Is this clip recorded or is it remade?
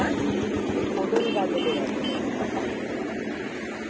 recorded